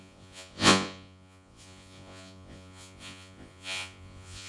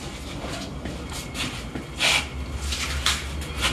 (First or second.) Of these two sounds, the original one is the second